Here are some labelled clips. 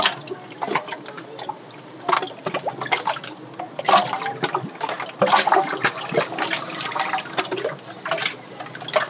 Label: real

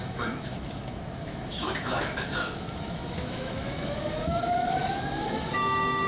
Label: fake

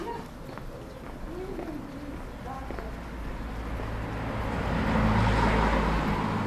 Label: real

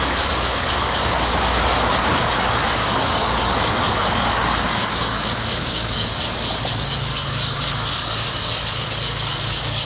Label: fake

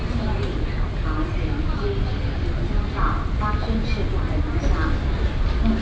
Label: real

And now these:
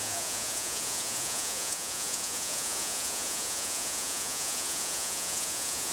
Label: fake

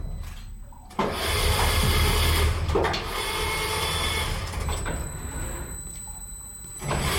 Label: real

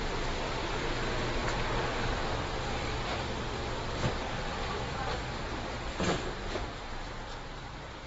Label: fake